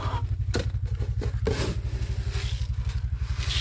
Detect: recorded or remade recorded